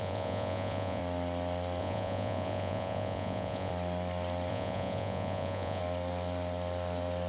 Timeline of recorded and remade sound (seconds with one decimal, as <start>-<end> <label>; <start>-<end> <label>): 0.0-1.0 remade; 1.0-1.8 recorded; 1.8-3.7 remade; 3.7-4.5 recorded; 4.5-5.8 remade; 5.8-7.3 recorded